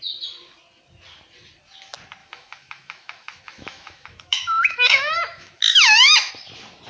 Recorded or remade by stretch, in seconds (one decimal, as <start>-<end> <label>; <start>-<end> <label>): 0.0-2.2 recorded; 2.2-6.3 remade; 6.3-6.9 recorded